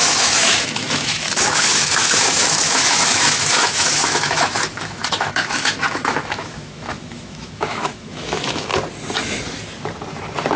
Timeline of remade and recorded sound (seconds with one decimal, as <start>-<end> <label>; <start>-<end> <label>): 0.0-8.7 remade; 8.7-10.6 recorded